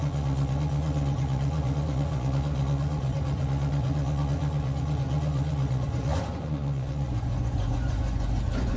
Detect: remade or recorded remade